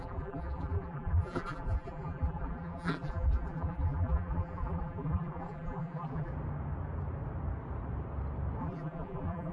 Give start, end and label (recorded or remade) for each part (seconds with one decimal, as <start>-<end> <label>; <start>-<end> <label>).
0.0-6.3 remade; 6.3-8.6 recorded; 8.6-9.5 remade